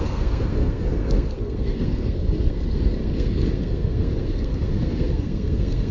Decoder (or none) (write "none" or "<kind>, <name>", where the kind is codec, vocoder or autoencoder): codec, SNAC